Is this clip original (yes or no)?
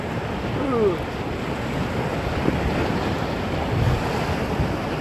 yes